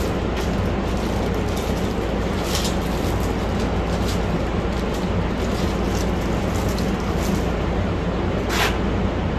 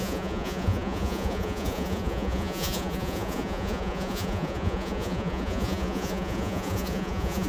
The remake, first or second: second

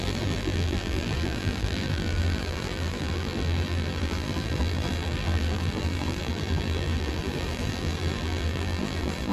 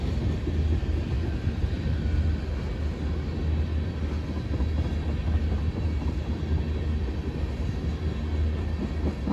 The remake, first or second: first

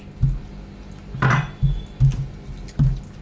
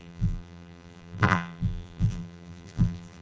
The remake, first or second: second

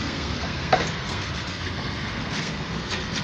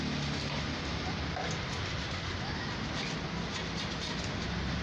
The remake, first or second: first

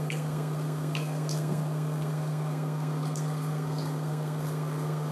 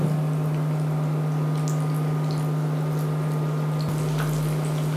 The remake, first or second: first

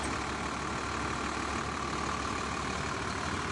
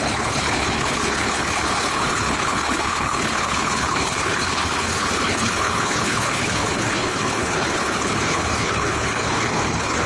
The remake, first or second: second